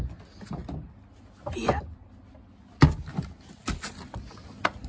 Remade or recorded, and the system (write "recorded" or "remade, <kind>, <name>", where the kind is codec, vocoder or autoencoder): recorded